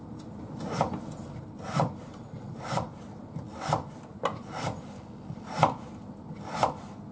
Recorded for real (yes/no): yes